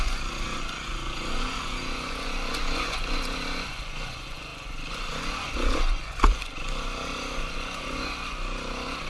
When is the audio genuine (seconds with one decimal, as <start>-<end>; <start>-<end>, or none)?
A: none